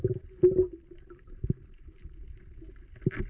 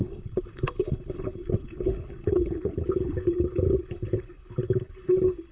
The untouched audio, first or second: first